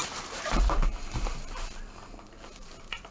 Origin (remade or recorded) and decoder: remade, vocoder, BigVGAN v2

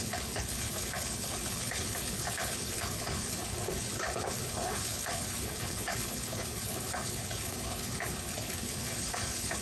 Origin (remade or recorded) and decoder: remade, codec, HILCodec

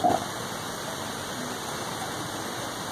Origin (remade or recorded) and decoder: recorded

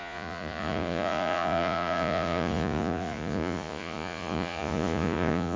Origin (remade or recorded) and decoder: remade, vocoder, Vocos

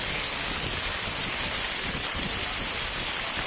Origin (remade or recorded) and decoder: recorded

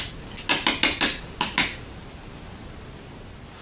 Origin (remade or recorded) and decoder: recorded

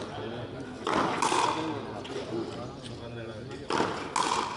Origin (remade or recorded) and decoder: recorded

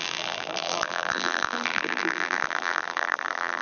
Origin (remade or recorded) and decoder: remade, vocoder, BigVGAN v2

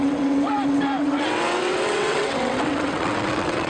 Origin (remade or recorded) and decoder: remade, vocoder, WaveNeXt